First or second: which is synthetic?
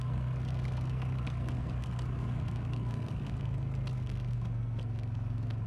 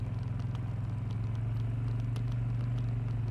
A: first